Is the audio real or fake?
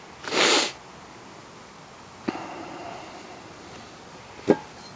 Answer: real